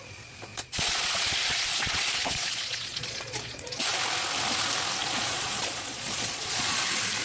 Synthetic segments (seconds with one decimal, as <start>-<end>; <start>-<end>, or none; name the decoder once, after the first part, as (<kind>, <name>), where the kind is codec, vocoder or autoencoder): 0.5-4.0 (vocoder, Vocos); 5.0-6.8